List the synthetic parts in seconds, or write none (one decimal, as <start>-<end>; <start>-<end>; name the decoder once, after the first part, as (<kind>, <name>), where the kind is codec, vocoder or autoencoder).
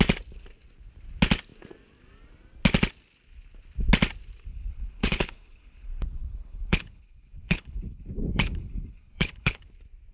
4.5-9.6 (codec, HILCodec)